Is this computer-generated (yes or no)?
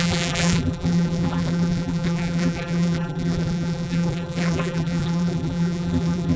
yes